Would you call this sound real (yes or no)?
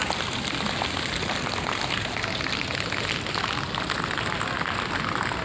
yes